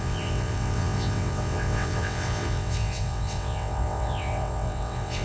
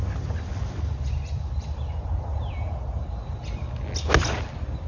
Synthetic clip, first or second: first